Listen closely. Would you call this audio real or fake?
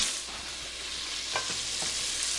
real